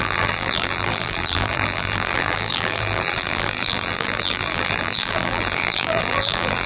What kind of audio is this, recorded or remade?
remade